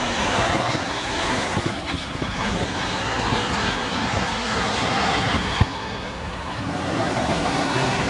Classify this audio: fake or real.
fake